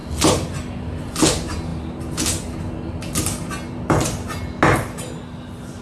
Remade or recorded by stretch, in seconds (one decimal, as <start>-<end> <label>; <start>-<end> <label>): 0.0-5.8 recorded